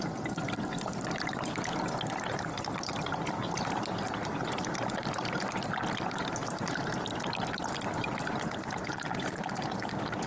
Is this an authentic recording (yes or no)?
yes